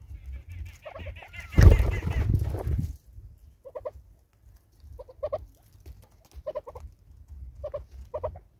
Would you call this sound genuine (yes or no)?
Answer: yes